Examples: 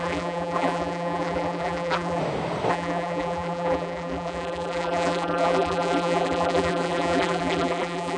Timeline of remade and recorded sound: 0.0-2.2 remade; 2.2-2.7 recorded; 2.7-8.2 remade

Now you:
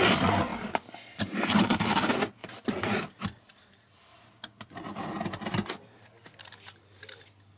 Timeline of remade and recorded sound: 0.0-7.6 recorded